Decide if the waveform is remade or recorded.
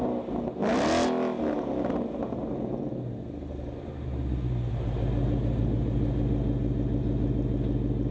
recorded